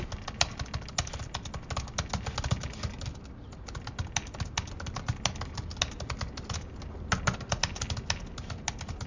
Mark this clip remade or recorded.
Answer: recorded